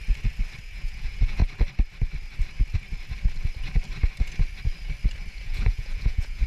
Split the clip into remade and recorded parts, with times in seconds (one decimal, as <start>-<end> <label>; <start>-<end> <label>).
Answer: 0.0-0.6 recorded; 0.6-1.4 remade; 1.4-5.3 recorded; 5.3-6.5 remade